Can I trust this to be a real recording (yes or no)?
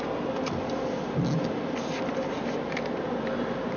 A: yes